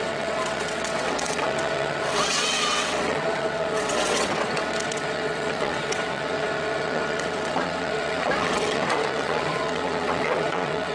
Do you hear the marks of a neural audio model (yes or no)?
yes